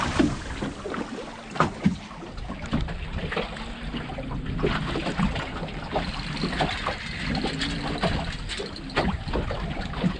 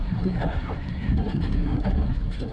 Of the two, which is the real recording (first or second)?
first